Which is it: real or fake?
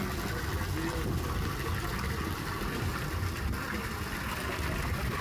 real